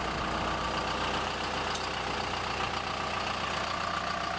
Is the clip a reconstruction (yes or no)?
no